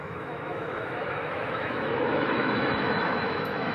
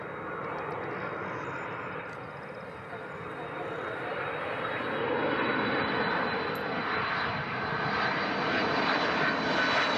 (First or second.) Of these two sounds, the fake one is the first